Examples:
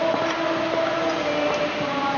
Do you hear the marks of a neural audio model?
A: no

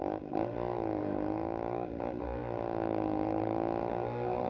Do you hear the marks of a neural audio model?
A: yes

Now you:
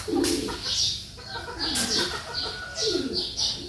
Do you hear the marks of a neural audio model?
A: no